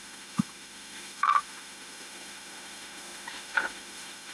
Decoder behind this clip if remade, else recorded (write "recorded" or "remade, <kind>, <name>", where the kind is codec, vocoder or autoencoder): remade, autoencoder, DAC-VAE